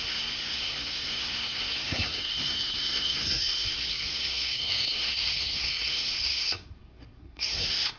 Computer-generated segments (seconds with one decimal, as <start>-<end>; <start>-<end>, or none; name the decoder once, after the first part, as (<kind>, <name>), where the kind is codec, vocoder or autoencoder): 0.0-8.0 (codec, SNAC)